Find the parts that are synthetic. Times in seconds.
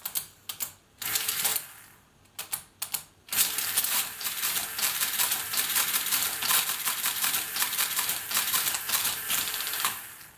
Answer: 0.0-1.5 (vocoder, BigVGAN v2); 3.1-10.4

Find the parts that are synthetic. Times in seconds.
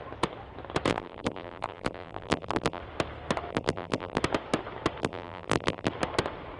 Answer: 0.9-2.8 (vocoder, BigVGAN v2); 3.5-4.2; 5.0-5.9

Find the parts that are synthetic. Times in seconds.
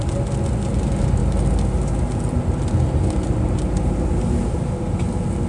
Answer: none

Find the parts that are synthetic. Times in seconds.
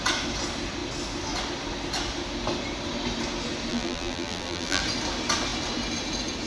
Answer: 3.7-4.8 (vocoder, BigVGAN v2)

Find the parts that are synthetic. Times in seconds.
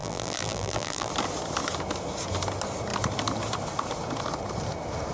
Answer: 0.0-1.1 (vocoder, BigVGAN v2)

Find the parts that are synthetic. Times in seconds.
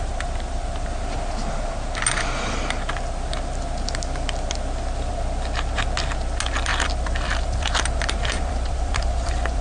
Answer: 6.7-9.6 (vocoder, BigVGAN v2)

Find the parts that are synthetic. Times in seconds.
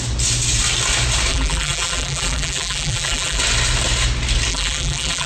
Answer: 1.3-3.4 (vocoder, BigVGAN v2); 4.5-5.3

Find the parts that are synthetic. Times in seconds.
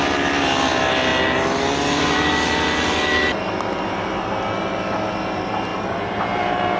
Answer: 0.0-1.1 (vocoder, BigVGAN v2); 1.8-5.7